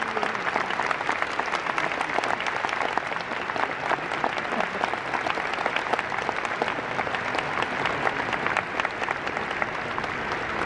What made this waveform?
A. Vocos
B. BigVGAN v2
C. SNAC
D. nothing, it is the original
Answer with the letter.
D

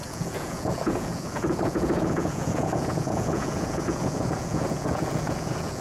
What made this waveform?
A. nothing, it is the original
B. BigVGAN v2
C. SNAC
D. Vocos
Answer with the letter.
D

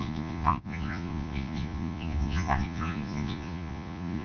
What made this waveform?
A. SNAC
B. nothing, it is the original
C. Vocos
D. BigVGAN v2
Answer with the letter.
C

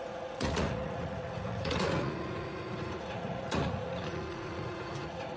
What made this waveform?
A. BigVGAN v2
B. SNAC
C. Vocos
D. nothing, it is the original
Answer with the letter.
C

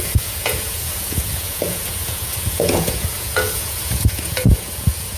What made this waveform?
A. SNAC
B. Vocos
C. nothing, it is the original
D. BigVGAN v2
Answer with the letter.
B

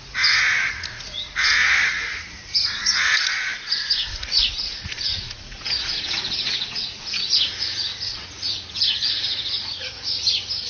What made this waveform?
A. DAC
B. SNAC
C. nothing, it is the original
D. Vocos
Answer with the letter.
D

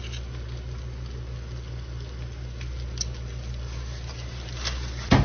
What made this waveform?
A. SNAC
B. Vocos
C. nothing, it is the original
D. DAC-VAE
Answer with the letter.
C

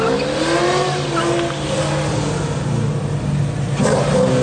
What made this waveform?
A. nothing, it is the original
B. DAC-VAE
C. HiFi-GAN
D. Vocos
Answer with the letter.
A